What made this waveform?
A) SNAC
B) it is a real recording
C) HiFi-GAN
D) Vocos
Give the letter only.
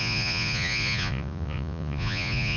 D